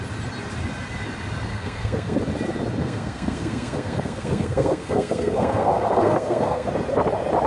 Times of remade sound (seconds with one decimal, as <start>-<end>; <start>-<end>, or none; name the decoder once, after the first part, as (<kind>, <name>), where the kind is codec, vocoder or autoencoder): 1.5-2.2 (codec, SNAC); 2.8-6.7